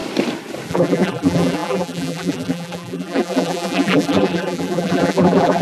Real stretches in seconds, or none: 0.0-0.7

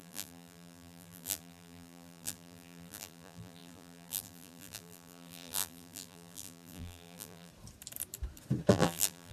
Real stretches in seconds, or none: 7.5-8.7

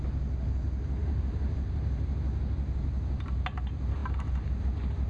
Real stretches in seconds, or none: 0.0-1.0; 2.1-5.1

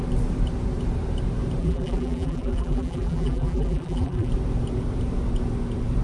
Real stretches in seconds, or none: 0.0-1.6; 4.3-6.0

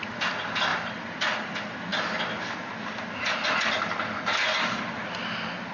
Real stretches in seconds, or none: 0.0-0.7; 1.5-4.5; 5.3-5.7

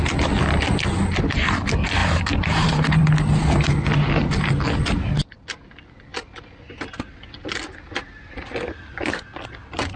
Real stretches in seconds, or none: 0.0-2.0; 3.1-10.0

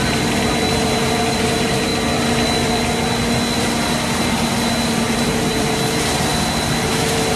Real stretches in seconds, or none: 1.9-4.7; 6.3-6.9

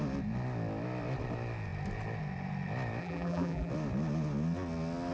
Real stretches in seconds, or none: 0.0-3.0; 3.7-5.1